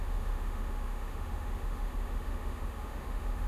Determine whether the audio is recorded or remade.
remade